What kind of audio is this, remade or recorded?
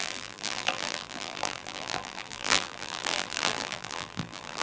remade